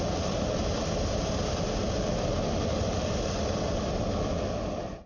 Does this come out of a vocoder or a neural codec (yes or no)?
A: no